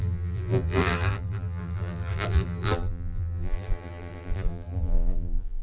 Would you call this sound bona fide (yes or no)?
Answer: no